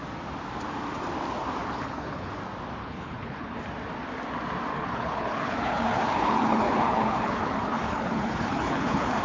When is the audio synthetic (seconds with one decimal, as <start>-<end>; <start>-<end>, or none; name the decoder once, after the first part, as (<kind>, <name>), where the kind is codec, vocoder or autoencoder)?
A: 1.6-2.3 (codec, HILCodec); 2.8-3.6; 4.7-9.2